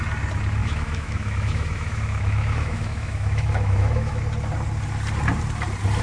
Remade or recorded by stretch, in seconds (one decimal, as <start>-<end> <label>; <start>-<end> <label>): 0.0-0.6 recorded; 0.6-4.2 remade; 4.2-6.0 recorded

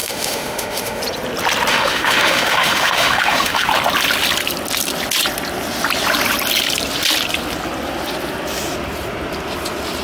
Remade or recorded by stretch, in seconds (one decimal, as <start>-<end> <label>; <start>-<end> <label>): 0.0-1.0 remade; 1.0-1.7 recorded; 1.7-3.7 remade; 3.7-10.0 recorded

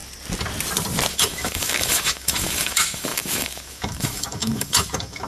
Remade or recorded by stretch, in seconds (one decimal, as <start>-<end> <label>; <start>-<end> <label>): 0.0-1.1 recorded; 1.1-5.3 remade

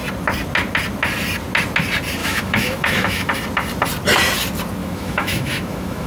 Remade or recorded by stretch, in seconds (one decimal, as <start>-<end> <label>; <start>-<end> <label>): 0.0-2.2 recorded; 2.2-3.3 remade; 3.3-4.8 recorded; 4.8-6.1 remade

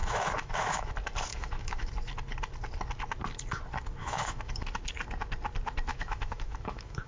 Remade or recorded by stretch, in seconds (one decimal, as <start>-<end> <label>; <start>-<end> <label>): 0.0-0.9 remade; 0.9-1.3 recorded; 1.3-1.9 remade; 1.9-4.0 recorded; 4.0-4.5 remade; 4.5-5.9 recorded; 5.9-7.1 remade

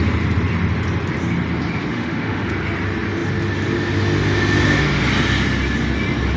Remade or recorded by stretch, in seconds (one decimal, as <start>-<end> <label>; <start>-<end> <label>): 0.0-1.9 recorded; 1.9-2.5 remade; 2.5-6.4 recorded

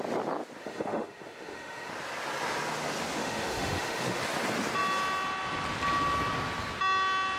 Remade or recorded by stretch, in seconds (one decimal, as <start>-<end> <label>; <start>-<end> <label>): 0.0-0.6 recorded; 0.6-1.9 remade; 1.9-3.2 recorded; 3.2-4.2 remade; 4.2-7.4 recorded

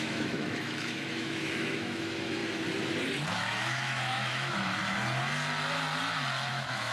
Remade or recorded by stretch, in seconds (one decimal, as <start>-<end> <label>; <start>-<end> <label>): 0.0-2.4 remade; 2.4-3.3 recorded; 3.3-4.8 remade; 4.8-6.5 recorded; 6.5-6.9 remade